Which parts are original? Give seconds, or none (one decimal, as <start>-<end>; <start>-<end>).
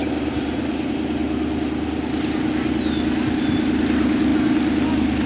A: 0.0-5.3